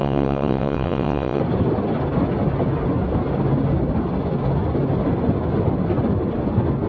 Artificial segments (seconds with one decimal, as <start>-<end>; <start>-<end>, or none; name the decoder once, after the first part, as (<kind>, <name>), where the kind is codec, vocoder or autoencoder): 0.0-1.4 (vocoder, WaveNeXt)